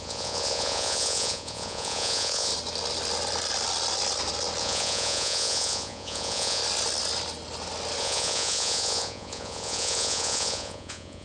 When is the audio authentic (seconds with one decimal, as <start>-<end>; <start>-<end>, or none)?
2.5-4.6; 6.6-8.0